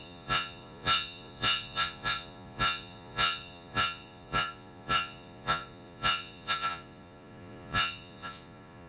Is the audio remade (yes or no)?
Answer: yes